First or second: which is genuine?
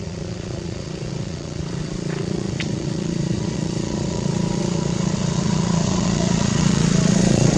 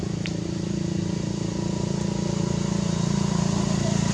second